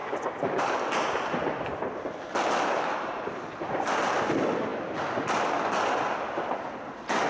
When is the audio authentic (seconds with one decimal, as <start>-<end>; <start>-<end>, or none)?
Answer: 0.0-7.3